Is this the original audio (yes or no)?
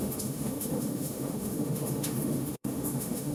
no